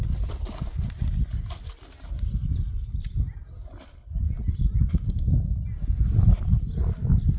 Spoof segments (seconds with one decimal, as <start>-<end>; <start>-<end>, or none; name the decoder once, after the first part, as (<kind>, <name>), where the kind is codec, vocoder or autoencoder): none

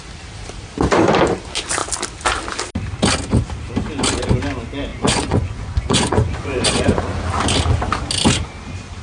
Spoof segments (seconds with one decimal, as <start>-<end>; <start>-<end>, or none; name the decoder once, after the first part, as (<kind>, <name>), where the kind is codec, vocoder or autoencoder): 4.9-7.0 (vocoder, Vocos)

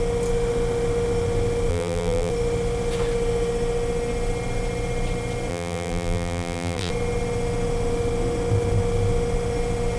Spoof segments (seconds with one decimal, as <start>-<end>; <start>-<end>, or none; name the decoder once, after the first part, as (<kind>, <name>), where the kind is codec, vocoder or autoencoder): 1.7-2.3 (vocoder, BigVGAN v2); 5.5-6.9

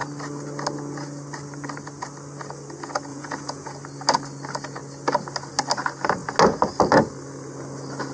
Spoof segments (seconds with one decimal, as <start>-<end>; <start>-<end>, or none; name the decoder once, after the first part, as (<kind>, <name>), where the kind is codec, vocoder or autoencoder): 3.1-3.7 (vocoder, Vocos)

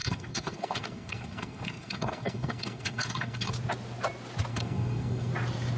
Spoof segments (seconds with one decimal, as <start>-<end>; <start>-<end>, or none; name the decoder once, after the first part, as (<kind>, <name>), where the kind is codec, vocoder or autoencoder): 0.0-3.5 (codec, SNAC); 4.5-5.3

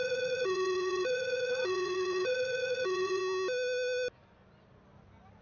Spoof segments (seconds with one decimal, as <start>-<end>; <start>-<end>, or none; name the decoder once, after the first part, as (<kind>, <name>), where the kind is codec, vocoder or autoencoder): 0.0-3.2 (vocoder, Vocos)

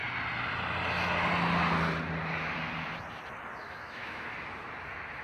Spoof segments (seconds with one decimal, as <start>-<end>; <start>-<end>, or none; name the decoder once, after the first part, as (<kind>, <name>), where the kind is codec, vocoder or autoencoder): 3.6-4.3 (autoencoder, DAC-VAE)

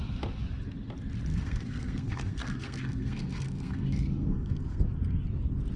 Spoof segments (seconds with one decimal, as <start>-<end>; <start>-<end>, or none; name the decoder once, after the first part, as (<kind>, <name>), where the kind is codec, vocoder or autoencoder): 1.3-4.8 (codec, SNAC)